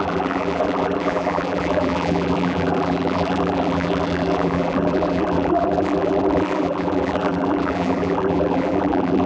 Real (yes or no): no